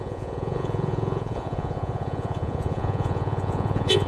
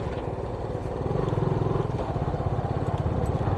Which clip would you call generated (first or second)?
first